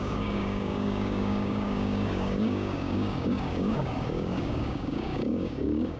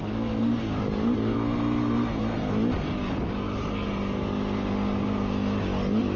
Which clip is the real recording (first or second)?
second